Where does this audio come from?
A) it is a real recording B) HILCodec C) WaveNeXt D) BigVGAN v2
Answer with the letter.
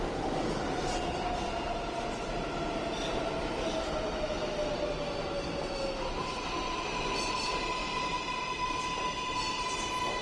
A